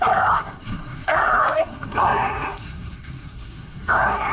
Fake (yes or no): yes